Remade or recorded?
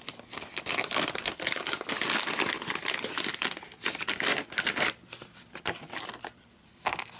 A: recorded